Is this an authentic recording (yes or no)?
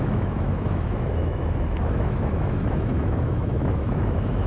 no